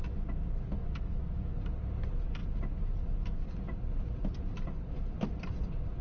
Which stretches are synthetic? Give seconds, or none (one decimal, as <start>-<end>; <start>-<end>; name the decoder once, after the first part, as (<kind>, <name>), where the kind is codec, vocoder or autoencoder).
0.8-1.5 (autoencoder, DAC-VAE)